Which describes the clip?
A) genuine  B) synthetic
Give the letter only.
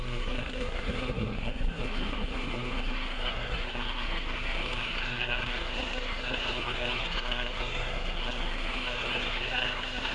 B